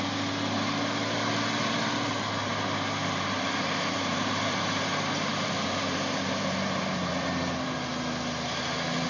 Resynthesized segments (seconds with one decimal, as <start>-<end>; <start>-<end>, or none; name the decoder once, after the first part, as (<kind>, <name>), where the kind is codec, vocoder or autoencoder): 3.0-7.4 (vocoder, BigVGAN v2)